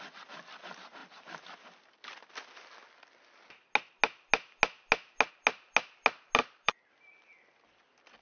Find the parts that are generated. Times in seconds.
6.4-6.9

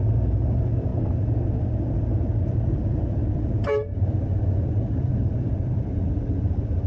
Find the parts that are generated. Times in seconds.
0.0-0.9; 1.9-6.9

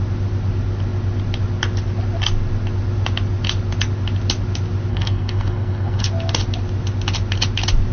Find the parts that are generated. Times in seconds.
4.9-6.1

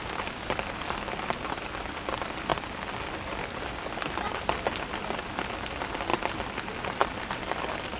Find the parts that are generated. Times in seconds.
none

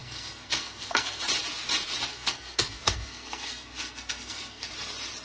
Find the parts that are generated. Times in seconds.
0.0-1.2; 2.1-4.7

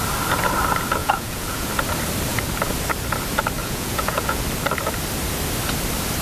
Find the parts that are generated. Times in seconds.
1.0-1.7; 3.6-4.4

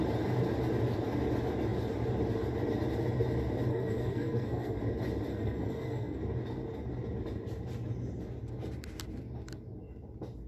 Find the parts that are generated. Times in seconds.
3.7-4.8; 5.3-6.2